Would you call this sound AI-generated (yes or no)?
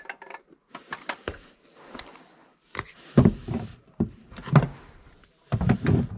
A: yes